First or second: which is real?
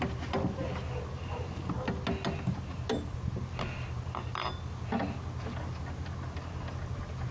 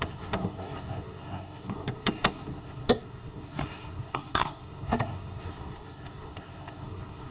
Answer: first